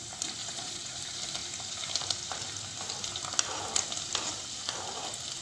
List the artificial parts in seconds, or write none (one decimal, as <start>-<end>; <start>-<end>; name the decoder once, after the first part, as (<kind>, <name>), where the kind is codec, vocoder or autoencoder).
0.4-1.0 (vocoder, Vocos)